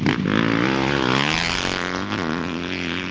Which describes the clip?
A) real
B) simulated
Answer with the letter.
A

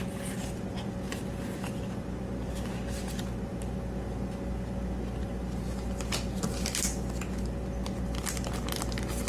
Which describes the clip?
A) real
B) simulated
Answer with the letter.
A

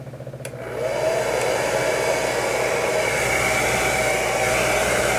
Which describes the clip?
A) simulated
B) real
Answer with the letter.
B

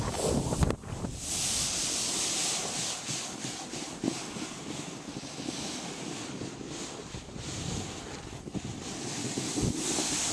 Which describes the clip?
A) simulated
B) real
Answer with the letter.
B